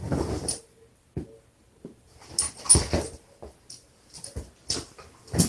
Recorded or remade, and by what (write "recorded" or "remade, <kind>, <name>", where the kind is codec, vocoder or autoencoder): recorded